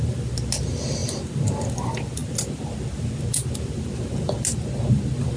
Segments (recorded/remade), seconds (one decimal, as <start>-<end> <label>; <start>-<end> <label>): 0.0-5.4 recorded